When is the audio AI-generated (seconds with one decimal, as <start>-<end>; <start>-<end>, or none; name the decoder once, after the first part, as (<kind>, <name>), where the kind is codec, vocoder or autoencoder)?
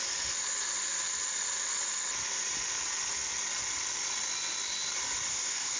5.3-5.8 (codec, ZipCodec)